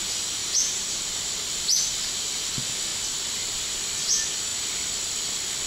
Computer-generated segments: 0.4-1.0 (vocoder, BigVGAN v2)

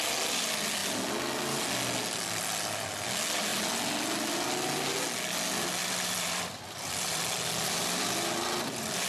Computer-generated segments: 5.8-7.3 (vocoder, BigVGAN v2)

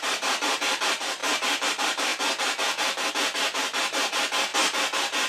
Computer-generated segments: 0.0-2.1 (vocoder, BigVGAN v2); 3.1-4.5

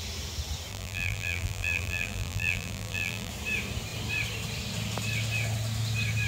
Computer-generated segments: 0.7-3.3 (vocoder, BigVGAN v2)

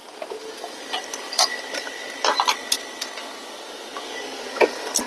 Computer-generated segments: 0.0-1.6 (vocoder, BigVGAN v2)

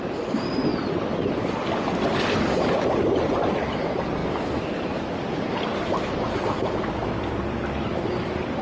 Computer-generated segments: 0.0-4.2 (vocoder, BigVGAN v2); 5.2-8.6

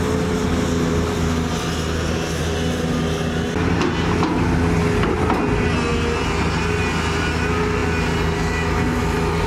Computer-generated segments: none